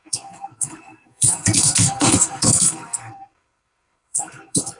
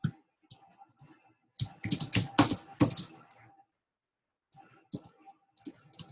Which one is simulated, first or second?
first